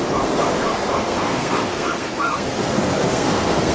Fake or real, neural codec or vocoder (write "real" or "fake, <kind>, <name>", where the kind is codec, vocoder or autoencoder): fake, codec, SNAC